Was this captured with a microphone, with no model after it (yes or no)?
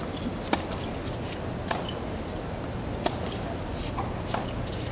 yes